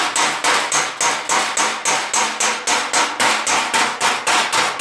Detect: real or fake real